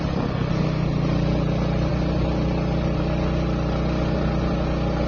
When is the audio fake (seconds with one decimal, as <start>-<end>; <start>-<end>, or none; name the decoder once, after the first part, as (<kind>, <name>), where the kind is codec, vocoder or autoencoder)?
none